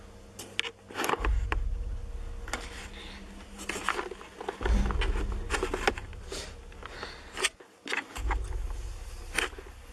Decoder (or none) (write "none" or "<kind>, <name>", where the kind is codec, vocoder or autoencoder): none